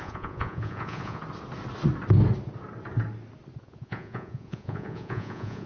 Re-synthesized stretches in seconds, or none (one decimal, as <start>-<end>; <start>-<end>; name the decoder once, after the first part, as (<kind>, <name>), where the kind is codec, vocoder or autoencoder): 0.0-1.2 (vocoder, Vocos); 3.6-5.7